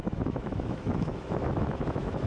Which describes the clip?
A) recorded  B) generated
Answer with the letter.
B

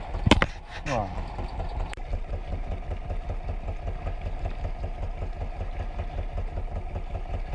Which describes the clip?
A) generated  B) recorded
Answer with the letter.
B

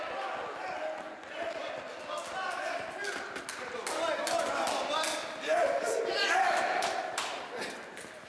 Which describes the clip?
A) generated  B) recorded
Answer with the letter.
B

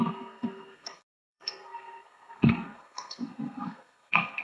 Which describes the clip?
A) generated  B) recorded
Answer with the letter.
A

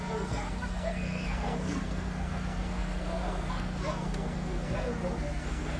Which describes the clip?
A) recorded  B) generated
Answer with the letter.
B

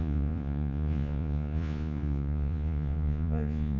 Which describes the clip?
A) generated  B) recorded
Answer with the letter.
A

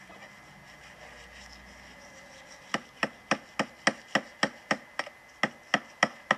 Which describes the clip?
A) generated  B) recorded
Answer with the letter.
B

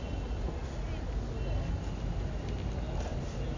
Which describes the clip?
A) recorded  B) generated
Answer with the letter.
A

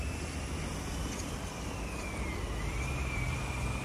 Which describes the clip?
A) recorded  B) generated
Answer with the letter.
A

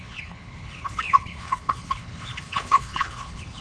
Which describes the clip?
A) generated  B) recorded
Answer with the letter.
A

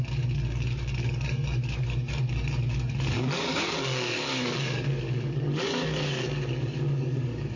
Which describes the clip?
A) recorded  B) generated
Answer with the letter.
B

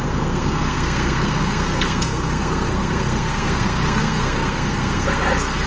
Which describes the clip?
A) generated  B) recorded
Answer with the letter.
A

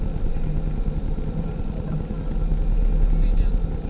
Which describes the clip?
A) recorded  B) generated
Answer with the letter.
A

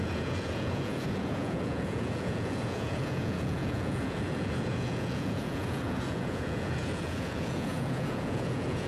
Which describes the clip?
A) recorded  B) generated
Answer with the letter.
B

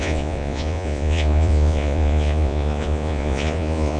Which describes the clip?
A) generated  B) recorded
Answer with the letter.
A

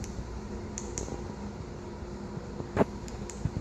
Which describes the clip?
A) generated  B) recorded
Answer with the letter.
A